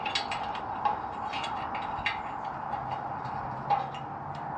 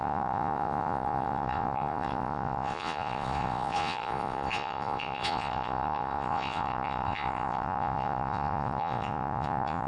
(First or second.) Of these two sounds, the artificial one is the second